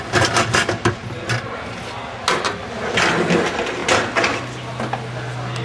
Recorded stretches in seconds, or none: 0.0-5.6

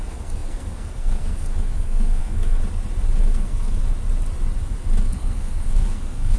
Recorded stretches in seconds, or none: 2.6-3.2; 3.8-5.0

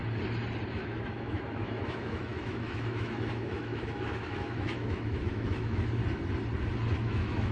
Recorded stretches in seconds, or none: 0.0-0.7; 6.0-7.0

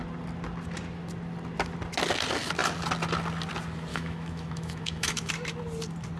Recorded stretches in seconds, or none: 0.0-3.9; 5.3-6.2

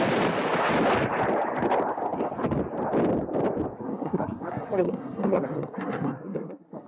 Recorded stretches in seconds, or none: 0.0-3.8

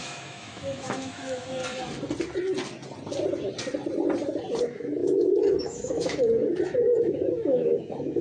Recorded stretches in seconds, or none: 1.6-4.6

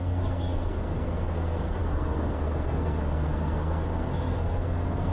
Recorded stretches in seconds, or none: none